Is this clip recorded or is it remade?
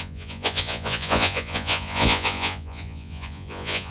remade